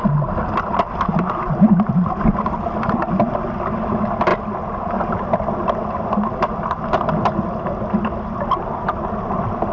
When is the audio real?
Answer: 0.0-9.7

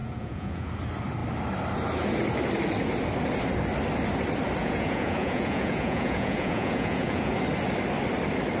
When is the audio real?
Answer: 0.7-4.6; 7.3-8.6

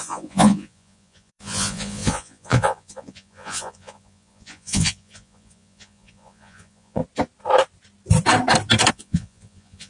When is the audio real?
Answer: 7.0-8.9

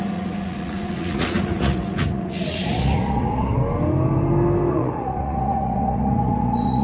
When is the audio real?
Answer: 3.6-4.7

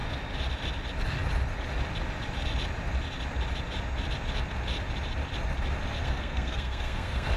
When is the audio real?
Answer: 0.0-6.0

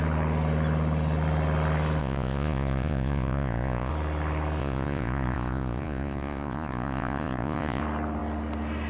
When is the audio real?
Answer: 0.0-2.0; 3.9-4.6; 7.8-8.9

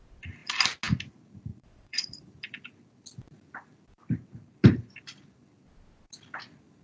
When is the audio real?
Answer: 0.0-1.5; 2.3-6.8

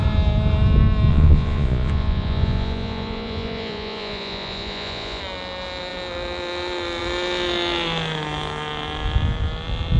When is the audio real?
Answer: 0.0-1.1; 5.2-10.0